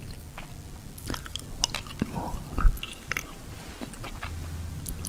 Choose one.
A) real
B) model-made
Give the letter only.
A